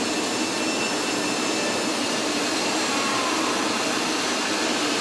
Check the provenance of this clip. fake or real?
real